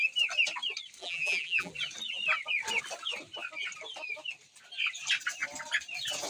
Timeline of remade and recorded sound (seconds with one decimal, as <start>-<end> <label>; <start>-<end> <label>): 0.0-1.0 recorded; 1.0-1.7 remade; 1.7-6.3 recorded